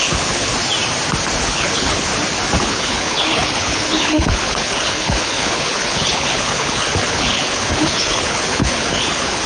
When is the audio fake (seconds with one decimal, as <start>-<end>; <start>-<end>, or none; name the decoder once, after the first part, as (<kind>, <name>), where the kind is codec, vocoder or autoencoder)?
0.0-0.5 (codec, HILCodec); 1.4-2.1; 2.6-9.5